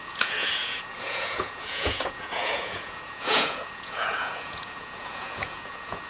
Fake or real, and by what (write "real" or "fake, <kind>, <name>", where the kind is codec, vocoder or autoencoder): fake, vocoder, Vocos